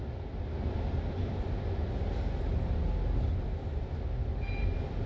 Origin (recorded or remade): recorded